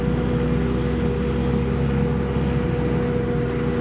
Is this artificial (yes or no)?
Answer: no